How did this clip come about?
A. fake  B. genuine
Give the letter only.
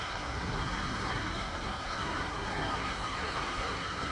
A